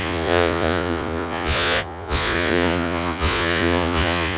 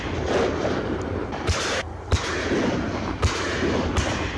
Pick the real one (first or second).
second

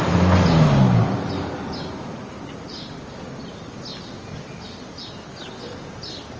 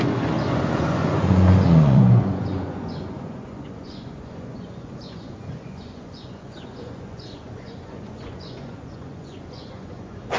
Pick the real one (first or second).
first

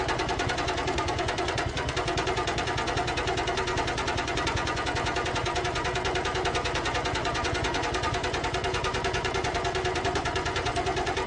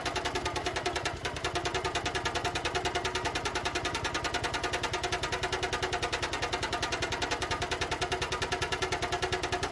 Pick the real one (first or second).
second